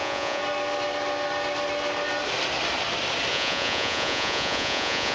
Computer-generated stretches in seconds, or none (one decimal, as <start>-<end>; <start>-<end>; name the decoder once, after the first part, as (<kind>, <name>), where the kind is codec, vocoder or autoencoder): 0.0-0.4 (vocoder, Vocos); 3.3-5.1